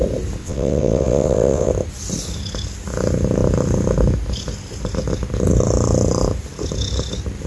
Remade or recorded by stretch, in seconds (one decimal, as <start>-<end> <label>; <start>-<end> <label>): 0.0-0.4 recorded; 0.4-1.7 remade; 1.7-7.5 recorded